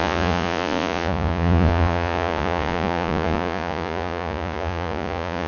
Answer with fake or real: fake